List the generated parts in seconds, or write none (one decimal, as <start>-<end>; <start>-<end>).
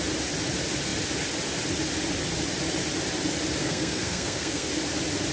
3.6-4.7